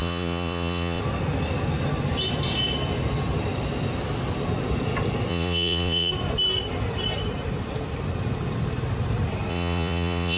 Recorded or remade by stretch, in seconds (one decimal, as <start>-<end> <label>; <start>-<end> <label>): 0.0-1.0 remade; 1.0-5.3 recorded; 5.3-6.1 remade; 6.1-9.5 recorded; 9.5-10.4 remade